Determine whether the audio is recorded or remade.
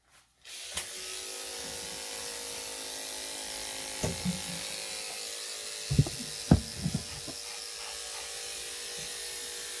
recorded